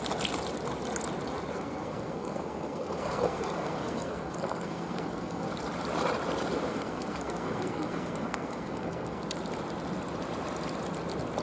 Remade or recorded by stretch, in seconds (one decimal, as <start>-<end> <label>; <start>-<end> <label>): 0.0-1.5 recorded; 1.5-5.5 remade; 5.5-6.7 recorded; 6.7-9.2 remade; 9.2-11.4 recorded